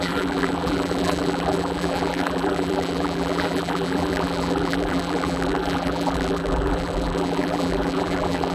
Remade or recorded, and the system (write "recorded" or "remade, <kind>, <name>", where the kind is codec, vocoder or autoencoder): remade, vocoder, BigVGAN v2